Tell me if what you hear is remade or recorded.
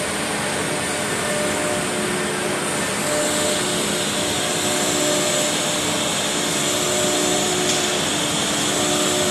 recorded